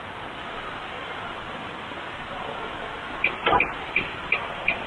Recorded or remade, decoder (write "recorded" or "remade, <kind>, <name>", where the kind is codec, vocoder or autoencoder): recorded